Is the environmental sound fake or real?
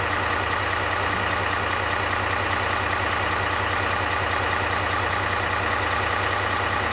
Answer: real